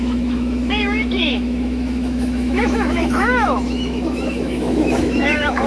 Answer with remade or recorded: remade